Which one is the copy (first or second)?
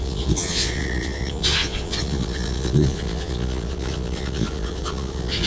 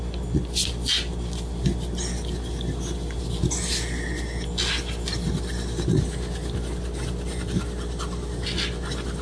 first